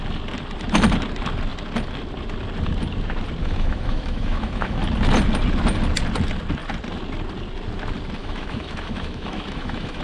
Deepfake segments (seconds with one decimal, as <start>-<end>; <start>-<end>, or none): 3.4-4.8; 8.2-10.0